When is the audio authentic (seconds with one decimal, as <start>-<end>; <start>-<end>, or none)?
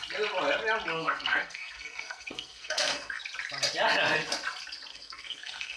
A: 0.0-0.9; 3.2-4.9